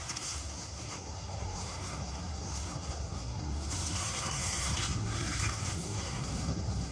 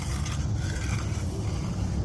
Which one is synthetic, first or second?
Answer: first